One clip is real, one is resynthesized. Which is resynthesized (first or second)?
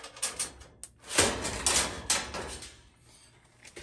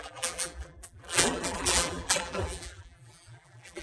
second